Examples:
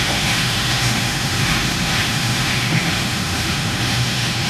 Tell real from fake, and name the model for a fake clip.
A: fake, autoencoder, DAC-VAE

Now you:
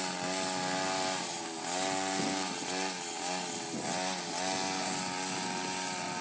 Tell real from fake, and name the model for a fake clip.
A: real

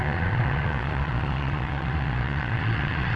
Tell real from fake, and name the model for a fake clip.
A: fake, vocoder, Vocos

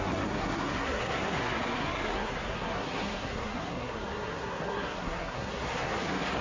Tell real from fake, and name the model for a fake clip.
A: fake, codec, SNAC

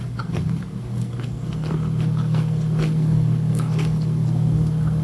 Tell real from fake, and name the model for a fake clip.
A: fake, codec, SNAC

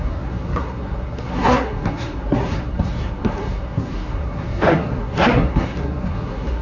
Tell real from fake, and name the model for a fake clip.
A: fake, codec, SNAC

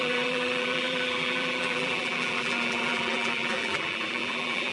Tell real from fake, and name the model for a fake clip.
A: fake, vocoder, BigVGAN v2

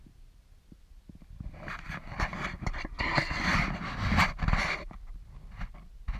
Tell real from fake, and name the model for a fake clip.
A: real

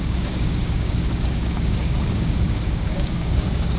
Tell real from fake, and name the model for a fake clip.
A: fake, codec, DAC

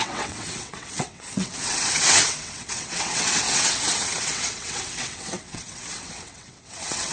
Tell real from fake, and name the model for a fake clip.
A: fake, vocoder, WaveNeXt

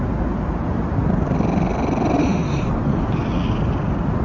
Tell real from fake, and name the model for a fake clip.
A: real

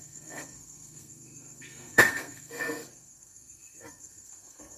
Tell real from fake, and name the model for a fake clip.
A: fake, codec, SNAC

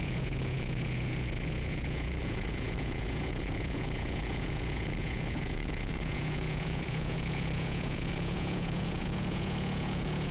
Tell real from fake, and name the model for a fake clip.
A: fake, vocoder, Vocos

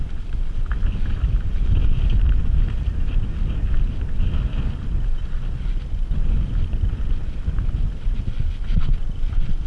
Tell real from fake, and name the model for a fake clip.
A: real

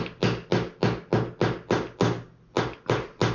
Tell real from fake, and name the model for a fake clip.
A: real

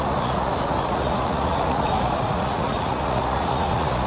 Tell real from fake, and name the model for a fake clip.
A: fake, vocoder, Vocos